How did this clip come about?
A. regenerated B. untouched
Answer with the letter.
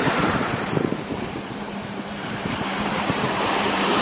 A